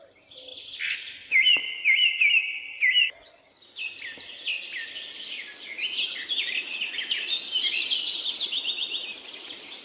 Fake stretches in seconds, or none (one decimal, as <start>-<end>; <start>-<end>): none